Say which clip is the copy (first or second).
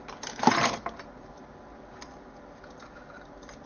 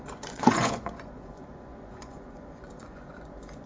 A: second